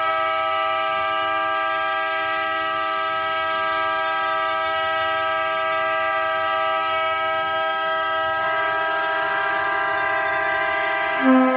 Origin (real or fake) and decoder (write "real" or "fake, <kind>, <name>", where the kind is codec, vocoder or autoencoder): fake, autoencoder, DAC-VAE